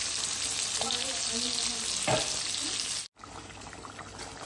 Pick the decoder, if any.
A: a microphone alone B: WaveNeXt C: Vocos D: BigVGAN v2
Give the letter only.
A